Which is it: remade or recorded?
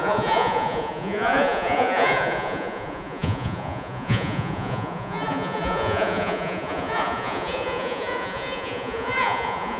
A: remade